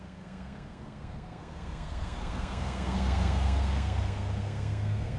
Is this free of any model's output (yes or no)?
no